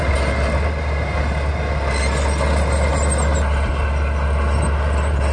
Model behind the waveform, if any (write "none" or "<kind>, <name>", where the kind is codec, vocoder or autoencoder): none